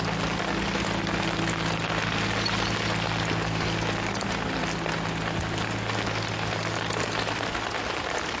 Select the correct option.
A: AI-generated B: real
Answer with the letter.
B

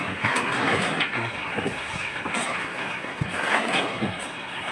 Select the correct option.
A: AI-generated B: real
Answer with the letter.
A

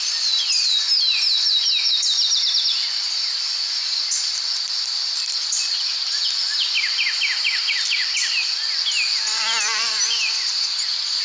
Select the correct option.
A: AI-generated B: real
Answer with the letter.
B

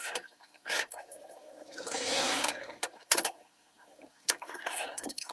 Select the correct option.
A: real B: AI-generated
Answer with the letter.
B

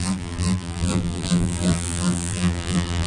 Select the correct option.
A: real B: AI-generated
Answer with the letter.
B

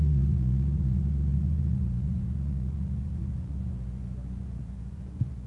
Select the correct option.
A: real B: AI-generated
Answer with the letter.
B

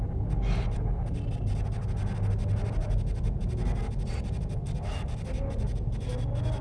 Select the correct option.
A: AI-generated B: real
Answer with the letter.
B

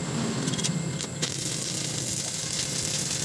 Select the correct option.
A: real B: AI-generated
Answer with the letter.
A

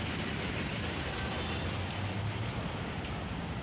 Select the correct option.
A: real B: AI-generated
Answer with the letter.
A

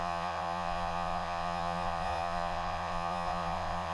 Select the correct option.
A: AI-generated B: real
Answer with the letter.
A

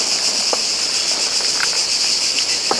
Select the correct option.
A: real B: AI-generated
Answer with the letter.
A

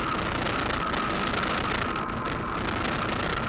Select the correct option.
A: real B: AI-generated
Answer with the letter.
A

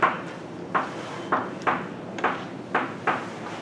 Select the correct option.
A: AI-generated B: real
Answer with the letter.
B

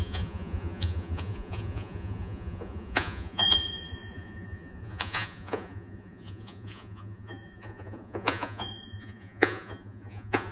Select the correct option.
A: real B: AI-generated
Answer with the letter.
B